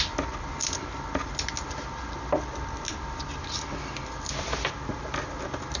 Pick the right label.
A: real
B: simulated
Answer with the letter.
A